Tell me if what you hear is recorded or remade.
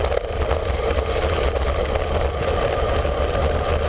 recorded